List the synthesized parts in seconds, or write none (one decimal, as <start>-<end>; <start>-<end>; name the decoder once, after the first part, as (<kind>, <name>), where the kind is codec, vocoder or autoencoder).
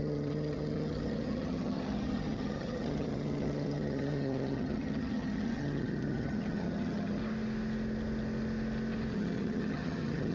0.0-7.2 (vocoder, HiFi-GAN); 9.1-10.3